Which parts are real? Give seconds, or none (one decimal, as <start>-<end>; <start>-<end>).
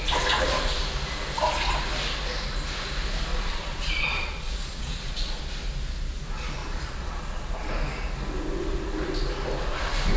0.0-3.3; 5.4-6.6; 7.7-10.2